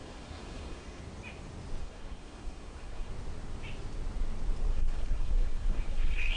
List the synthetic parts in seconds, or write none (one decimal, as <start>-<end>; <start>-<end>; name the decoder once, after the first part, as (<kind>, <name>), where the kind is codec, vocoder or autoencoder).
0.0-1.0 (codec, SNAC); 1.8-3.1; 4.7-6.4